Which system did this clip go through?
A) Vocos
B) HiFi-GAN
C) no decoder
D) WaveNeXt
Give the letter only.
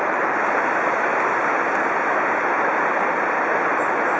C